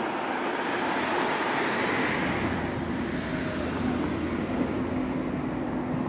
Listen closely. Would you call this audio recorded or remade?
recorded